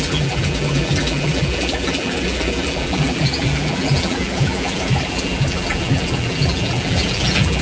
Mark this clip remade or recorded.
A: remade